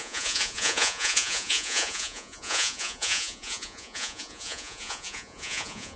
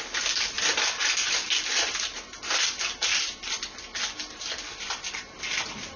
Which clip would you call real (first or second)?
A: second